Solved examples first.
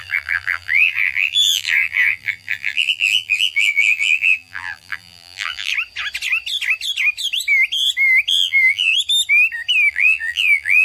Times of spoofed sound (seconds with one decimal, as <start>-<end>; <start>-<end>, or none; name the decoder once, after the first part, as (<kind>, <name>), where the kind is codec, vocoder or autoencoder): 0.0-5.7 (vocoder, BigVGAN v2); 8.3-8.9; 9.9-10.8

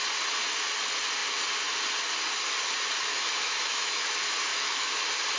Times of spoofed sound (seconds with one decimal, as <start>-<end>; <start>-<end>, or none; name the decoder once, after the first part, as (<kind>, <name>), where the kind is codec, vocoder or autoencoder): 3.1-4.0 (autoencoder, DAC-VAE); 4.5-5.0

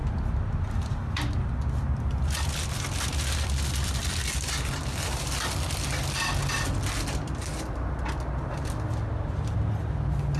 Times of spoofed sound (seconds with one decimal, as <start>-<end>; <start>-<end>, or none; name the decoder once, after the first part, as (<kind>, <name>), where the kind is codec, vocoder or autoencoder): none